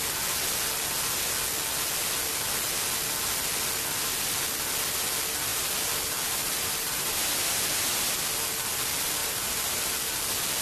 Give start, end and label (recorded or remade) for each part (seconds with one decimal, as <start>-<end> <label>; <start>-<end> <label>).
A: 0.0-5.5 recorded; 5.5-7.7 remade; 7.7-9.2 recorded; 9.2-9.8 remade; 9.8-10.6 recorded